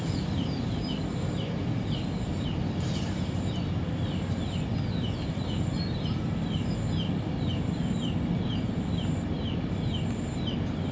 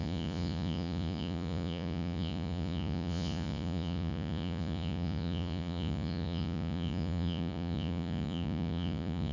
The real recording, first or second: first